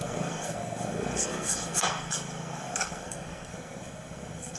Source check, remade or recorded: remade